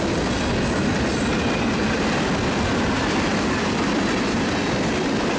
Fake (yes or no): no